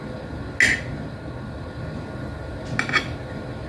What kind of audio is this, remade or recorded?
recorded